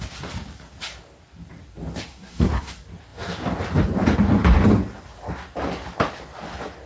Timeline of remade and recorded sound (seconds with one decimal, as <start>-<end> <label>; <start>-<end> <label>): 0.0-2.1 recorded; 2.1-2.7 remade; 2.7-6.9 recorded